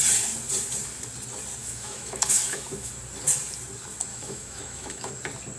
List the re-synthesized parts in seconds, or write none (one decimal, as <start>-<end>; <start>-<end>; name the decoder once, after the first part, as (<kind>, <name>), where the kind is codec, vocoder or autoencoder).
1.6-2.9 (autoencoder, DAC-VAE); 4.1-5.1